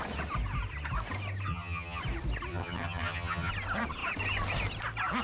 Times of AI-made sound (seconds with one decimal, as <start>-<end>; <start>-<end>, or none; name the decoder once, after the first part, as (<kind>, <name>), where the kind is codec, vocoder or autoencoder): 1.5-2.0 (vocoder, HiFi-GAN); 2.5-3.5